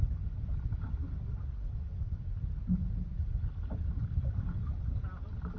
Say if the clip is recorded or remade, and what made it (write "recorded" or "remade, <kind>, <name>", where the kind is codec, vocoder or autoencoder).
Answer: recorded